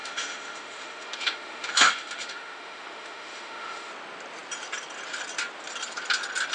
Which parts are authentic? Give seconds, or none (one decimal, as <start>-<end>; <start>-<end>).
3.9-6.5